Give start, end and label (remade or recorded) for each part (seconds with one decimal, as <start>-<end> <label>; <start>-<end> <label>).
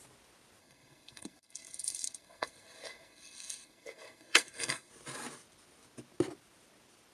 0.0-0.6 recorded; 0.6-4.9 remade; 4.9-7.1 recorded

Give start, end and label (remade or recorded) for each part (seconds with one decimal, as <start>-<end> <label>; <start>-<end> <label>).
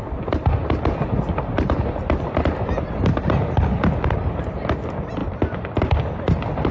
0.0-6.7 recorded